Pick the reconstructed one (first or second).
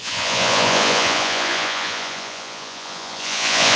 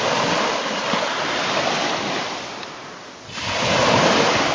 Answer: first